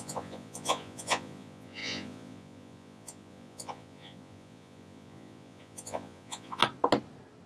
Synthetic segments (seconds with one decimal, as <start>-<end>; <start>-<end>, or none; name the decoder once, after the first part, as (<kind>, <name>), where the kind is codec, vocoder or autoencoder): 0.0-6.6 (vocoder, Vocos)